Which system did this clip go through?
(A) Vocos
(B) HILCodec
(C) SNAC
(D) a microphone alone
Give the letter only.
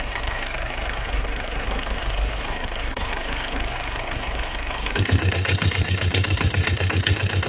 C